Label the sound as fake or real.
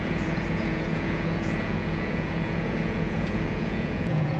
fake